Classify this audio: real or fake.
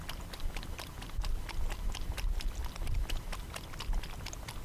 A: real